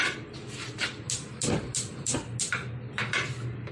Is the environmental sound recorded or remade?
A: recorded